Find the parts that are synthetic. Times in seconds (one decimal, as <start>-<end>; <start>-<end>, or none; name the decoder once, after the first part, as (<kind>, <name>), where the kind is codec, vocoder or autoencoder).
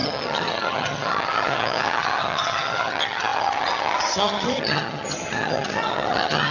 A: 0.0-6.5 (vocoder, HiFi-GAN)